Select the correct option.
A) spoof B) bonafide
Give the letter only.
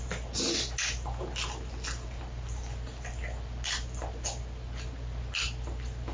B